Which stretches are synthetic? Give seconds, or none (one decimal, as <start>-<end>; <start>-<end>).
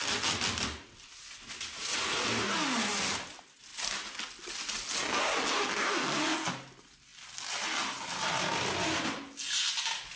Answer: none